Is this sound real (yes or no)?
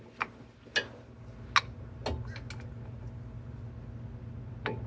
yes